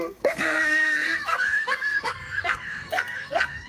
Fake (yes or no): yes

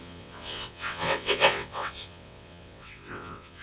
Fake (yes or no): yes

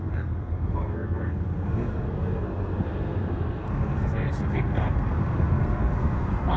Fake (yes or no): yes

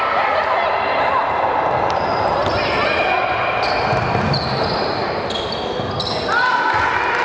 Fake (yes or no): no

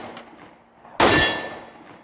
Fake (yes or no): no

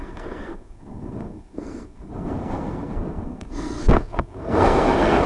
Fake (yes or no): yes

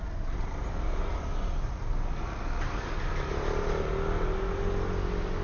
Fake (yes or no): no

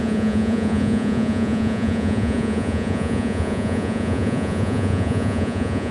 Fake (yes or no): yes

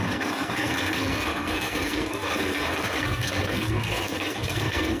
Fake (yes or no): yes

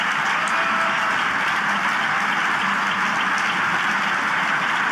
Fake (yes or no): no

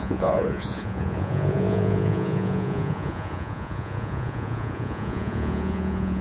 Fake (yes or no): yes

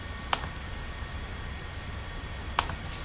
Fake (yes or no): no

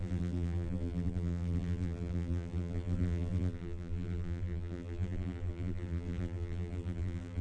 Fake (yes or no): yes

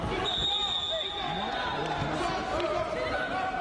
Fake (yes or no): no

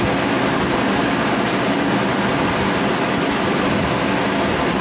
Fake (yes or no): no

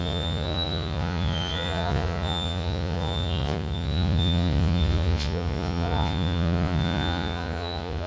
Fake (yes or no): yes